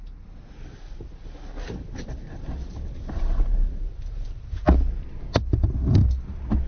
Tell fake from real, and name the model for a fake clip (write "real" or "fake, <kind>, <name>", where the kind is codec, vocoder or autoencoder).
real